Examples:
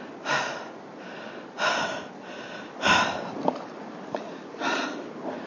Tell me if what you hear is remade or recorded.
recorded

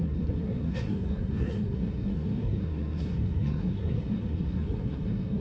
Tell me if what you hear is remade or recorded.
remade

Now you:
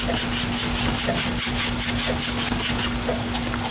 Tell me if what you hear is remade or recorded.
recorded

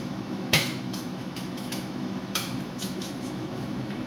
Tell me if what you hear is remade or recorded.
remade